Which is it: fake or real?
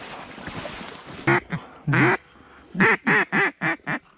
real